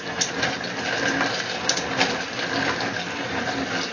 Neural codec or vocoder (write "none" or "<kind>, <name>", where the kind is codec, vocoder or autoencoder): none